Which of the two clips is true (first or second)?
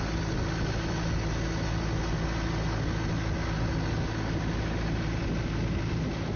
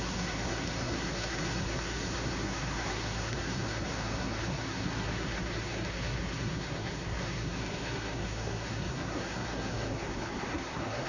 first